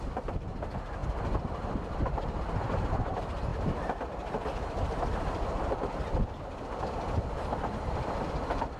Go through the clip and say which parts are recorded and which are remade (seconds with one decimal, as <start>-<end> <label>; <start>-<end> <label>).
0.0-3.5 recorded; 3.5-8.3 remade; 8.3-8.8 recorded